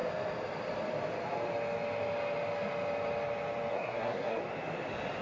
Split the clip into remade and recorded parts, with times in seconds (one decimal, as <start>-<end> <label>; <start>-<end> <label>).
0.0-3.7 recorded; 3.7-4.4 remade; 4.4-5.2 recorded